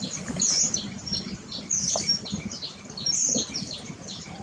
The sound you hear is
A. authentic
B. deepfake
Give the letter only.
B